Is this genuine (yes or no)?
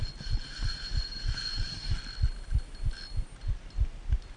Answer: yes